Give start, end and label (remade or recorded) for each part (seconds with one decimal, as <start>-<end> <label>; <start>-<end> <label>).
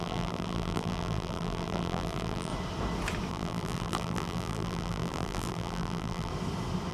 0.0-2.5 remade; 2.5-3.3 recorded; 3.3-6.3 remade; 6.3-6.9 recorded